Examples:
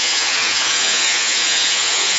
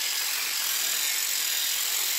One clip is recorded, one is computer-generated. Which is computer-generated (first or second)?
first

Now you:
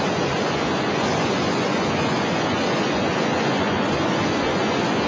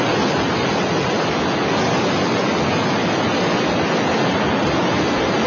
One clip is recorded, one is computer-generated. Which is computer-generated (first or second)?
first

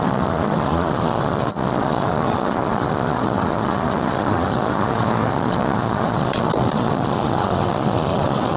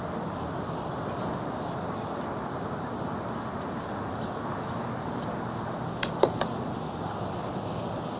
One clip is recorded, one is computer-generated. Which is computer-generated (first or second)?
first